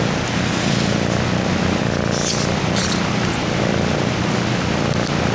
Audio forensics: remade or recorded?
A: recorded